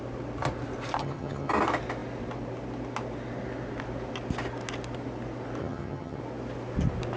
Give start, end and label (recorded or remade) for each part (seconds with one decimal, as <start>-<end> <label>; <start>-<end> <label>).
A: 0.0-1.0 recorded; 1.0-1.5 remade; 1.5-5.6 recorded; 5.6-6.2 remade; 6.2-7.2 recorded